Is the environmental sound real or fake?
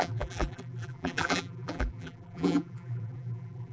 fake